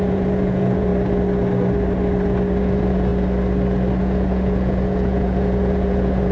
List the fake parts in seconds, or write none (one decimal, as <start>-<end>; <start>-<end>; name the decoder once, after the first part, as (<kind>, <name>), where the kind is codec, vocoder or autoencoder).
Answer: 0.0-0.9 (vocoder, Vocos); 2.6-3.1; 4.0-6.3